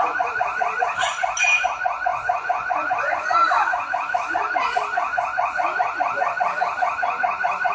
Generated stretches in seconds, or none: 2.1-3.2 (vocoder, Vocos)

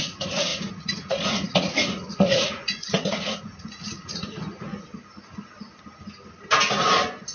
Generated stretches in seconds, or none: 0.0-4.7 (vocoder, Vocos)

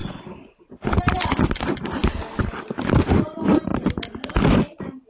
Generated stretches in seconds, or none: none

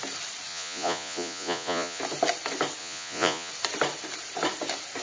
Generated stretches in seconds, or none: 0.5-2.0 (vocoder, Vocos); 2.8-3.5

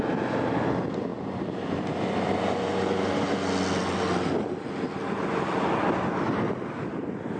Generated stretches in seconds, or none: none

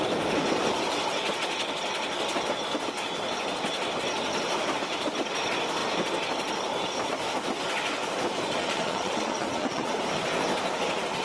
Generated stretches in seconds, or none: 8.6-9.9 (vocoder, Vocos)

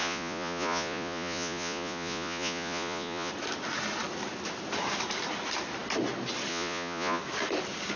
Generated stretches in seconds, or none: 0.0-3.3 (vocoder, Vocos); 6.5-7.2